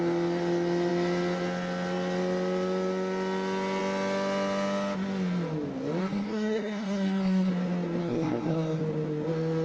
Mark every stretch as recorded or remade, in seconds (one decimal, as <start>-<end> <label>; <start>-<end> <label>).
0.0-6.0 recorded; 6.0-7.5 remade; 7.5-8.0 recorded; 8.0-8.8 remade; 8.8-9.6 recorded